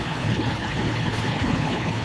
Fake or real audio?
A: fake